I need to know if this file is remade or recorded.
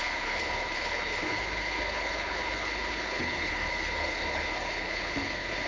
remade